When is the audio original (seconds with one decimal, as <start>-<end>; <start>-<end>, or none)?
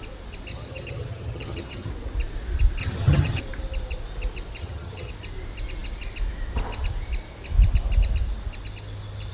0.0-0.5; 1.9-2.8; 3.4-4.6; 5.1-9.3